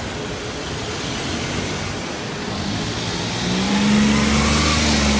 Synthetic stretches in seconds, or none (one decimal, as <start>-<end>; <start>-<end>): none